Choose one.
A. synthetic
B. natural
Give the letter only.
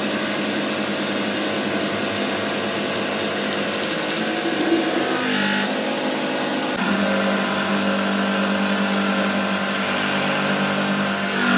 B